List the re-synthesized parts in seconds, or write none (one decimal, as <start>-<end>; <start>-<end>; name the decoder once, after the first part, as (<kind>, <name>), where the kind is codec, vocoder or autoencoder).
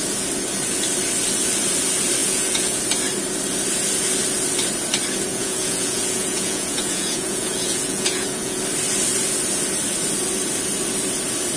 2.2-2.8 (vocoder, Vocos); 5.3-8.6